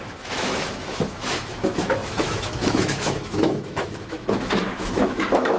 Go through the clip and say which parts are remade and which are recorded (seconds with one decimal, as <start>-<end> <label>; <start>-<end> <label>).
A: 0.0-5.6 remade